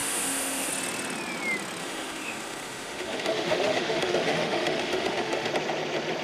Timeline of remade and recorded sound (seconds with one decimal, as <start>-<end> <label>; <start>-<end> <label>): 0.0-0.7 remade; 0.7-1.8 recorded; 1.8-5.5 remade; 5.5-6.2 recorded